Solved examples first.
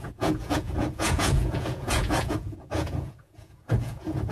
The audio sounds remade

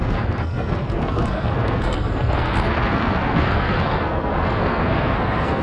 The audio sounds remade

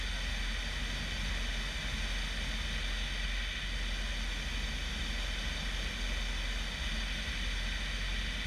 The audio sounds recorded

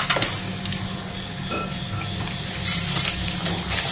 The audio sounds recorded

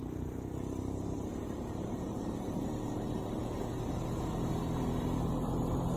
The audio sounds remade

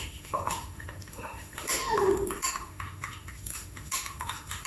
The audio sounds remade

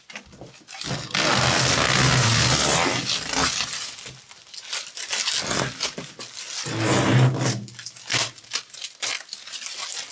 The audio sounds recorded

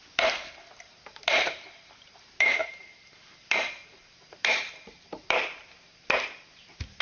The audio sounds remade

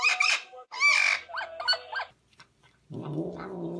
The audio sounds recorded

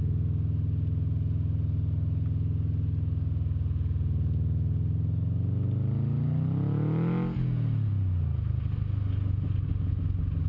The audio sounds recorded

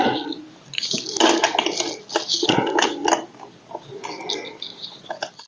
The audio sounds recorded